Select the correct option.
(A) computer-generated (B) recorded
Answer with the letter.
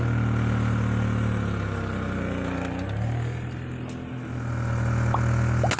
B